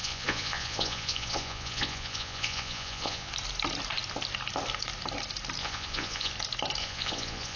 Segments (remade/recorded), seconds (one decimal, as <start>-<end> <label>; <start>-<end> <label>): 0.0-3.3 remade; 3.3-5.6 recorded; 5.6-6.3 remade; 6.3-6.8 recorded; 6.8-7.6 remade